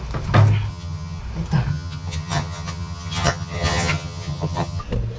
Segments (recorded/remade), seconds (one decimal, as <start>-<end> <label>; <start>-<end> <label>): 0.0-0.7 recorded; 0.7-1.2 remade; 1.2-1.7 recorded; 1.7-4.8 remade; 4.8-5.2 recorded